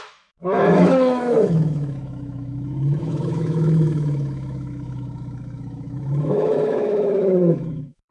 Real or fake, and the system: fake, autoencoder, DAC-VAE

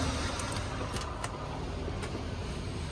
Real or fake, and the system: real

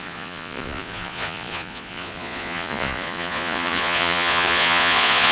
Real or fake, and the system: fake, vocoder, Vocos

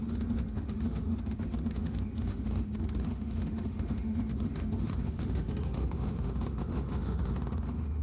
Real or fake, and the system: fake, autoencoder, DAC-VAE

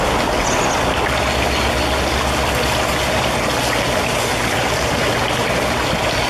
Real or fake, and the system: real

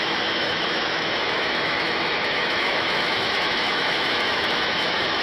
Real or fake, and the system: fake, autoencoder, DAC-VAE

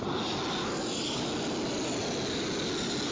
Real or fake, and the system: real